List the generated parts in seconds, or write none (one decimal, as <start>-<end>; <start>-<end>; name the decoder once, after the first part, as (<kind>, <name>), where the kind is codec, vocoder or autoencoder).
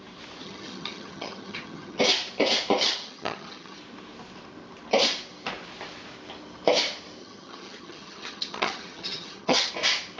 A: 0.4-2.0 (vocoder, HiFi-GAN); 2.8-3.8; 7.2-9.7